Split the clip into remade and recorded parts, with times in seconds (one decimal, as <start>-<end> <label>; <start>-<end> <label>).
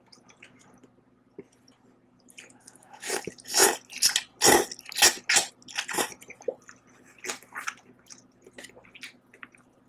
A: 0.0-2.6 recorded; 2.6-3.1 remade; 3.1-9.9 recorded